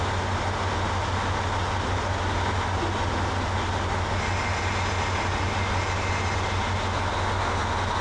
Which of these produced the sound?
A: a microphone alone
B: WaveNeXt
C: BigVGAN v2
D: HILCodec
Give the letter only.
A